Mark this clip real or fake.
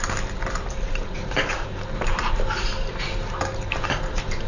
real